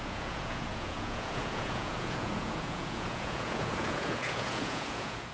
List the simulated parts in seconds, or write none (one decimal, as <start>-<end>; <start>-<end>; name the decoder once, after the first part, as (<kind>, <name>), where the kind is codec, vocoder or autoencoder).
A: 0.0-5.3 (vocoder, Vocos)